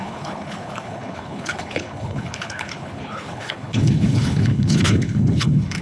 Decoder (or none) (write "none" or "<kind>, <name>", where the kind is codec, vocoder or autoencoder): codec, HILCodec